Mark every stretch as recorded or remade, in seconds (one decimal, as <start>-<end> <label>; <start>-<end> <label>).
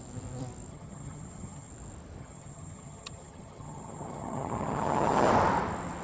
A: 0.0-0.7 recorded; 0.7-1.7 remade; 1.7-2.2 recorded; 2.2-5.3 remade; 5.3-6.0 recorded